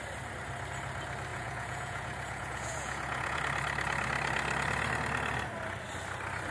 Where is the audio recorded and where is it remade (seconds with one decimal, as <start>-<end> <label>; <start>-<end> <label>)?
0.0-1.3 recorded; 1.3-3.4 remade; 3.4-6.5 recorded